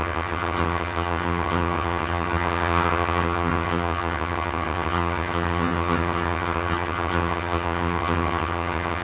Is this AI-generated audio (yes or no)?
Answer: yes